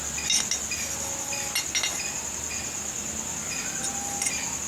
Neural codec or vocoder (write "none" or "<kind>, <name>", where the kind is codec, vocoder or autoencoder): none